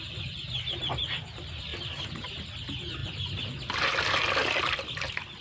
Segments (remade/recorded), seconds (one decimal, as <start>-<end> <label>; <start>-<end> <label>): 0.0-5.4 recorded